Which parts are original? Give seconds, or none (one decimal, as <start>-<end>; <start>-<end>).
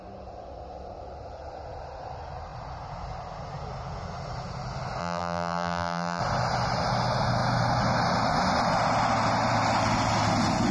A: 0.0-5.0; 6.2-10.7